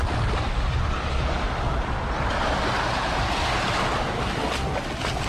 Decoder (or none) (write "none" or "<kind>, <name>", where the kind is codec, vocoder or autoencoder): none